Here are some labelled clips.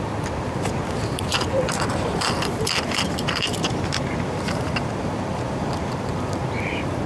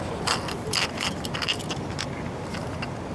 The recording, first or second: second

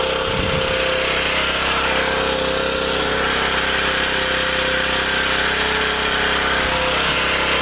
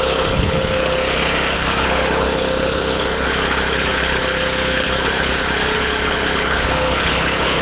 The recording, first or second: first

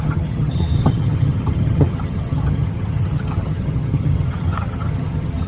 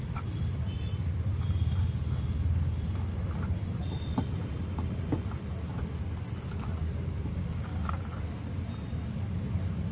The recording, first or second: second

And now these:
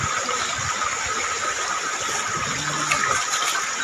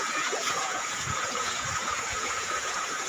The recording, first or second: first